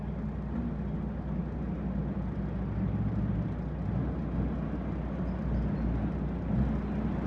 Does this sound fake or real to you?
real